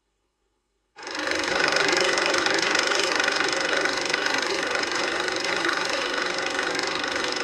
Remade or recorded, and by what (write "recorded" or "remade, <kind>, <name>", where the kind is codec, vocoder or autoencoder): remade, codec, SNAC